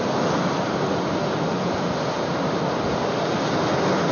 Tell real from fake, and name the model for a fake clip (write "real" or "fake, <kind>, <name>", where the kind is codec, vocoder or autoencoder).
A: real